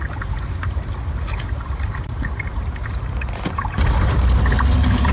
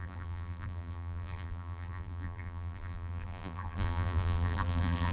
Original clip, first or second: first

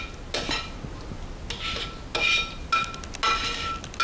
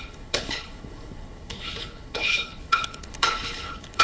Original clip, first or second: first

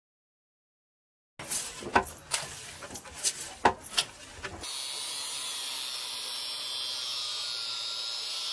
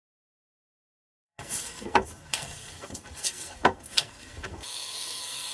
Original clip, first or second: first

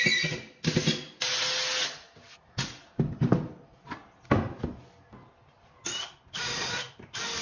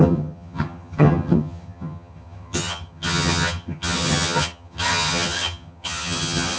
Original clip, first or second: first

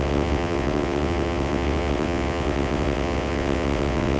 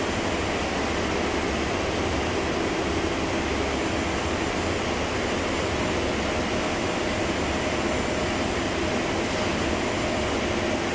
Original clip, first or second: second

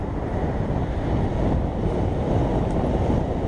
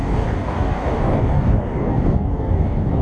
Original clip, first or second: first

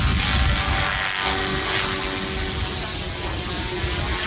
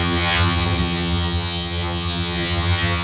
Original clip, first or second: first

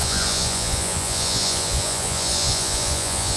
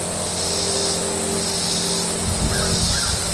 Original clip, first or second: second